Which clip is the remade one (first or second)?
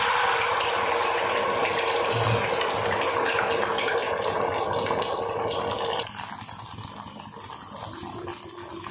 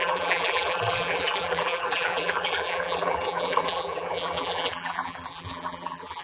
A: second